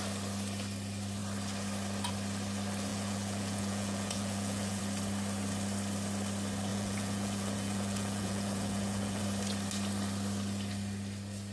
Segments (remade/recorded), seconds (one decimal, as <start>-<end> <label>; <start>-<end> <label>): 0.0-2.9 recorded; 2.9-4.8 remade; 4.8-6.7 recorded; 6.7-9.2 remade; 9.2-11.5 recorded